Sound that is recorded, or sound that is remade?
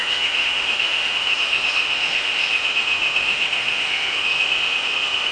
remade